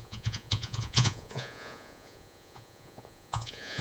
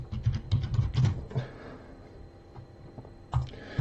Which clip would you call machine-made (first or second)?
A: first